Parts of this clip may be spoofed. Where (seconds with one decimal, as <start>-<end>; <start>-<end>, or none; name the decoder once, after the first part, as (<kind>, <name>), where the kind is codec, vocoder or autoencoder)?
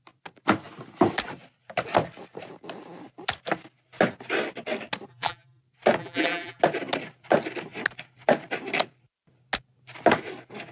5.1-5.6 (vocoder, BigVGAN v2); 6.0-6.6